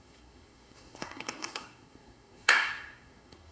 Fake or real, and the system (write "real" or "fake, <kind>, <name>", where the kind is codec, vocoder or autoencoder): fake, codec, SNAC